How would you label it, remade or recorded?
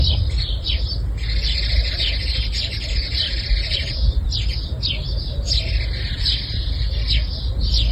recorded